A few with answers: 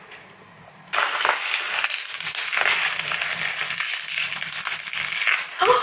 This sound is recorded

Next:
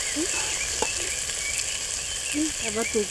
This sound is recorded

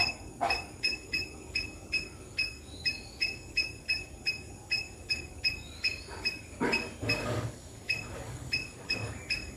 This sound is remade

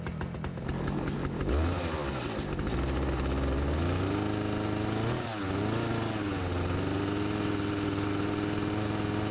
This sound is recorded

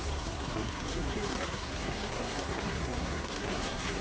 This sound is remade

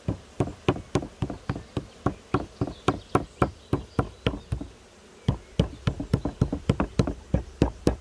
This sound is recorded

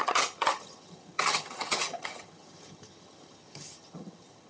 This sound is remade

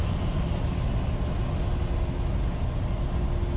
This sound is recorded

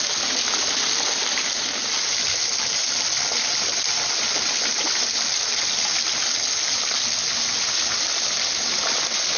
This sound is recorded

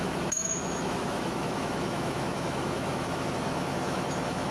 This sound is remade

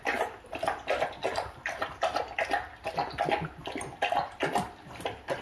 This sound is recorded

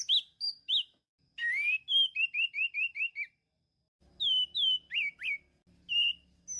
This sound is recorded